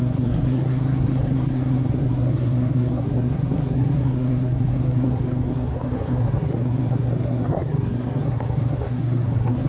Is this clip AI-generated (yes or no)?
yes